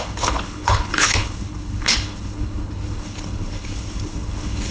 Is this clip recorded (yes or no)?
no